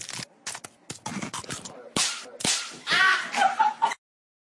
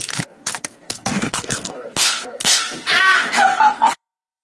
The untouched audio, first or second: first